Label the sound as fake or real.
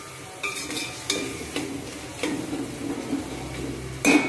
real